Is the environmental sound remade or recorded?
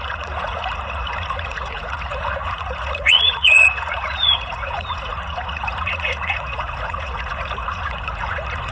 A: remade